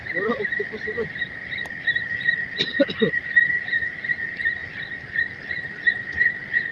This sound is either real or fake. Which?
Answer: real